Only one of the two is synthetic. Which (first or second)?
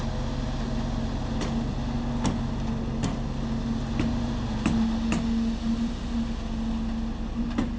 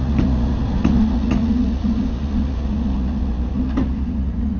second